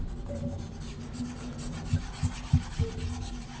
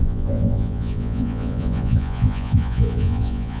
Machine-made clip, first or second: second